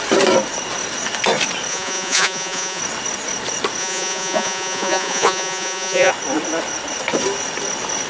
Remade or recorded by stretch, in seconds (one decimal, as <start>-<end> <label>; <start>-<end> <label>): 0.0-1.7 recorded; 1.7-2.8 remade; 2.8-3.8 recorded; 3.8-6.1 remade; 6.1-8.1 recorded